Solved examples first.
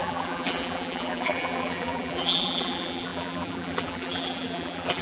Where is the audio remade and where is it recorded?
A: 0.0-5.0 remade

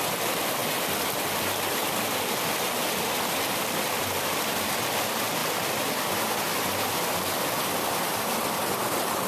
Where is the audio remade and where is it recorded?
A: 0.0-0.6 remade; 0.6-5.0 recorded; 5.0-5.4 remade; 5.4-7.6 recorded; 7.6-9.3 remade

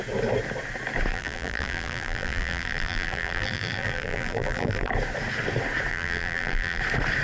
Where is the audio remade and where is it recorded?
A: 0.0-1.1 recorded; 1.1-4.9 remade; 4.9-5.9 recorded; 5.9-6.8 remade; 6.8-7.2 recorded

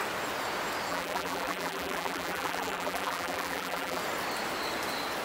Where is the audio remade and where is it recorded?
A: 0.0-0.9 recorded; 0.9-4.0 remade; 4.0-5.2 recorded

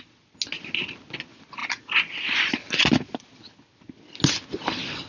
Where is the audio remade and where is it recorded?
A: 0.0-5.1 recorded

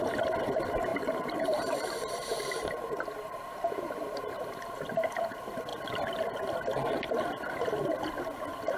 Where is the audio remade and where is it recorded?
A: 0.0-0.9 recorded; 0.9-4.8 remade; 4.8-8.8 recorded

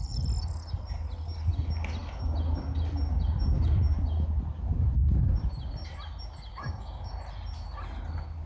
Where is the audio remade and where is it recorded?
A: 0.0-6.5 recorded; 6.5-7.1 remade; 7.1-8.5 recorded

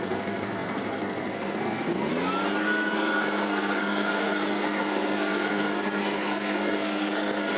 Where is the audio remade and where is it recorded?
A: 0.0-2.1 remade; 2.1-2.6 recorded; 2.6-7.6 remade